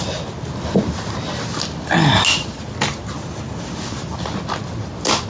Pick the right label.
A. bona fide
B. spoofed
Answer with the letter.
A